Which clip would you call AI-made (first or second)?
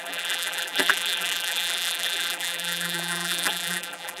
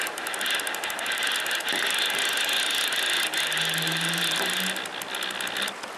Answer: first